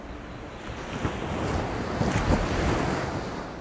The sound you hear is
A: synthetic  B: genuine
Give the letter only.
B